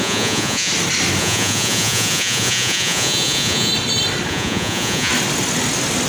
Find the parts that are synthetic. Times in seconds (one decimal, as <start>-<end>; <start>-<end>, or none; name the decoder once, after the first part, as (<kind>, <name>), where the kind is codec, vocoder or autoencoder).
0.0-0.7 (vocoder, Vocos); 1.2-3.7; 4.3-5.1